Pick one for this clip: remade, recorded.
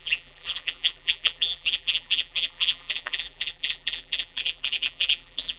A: remade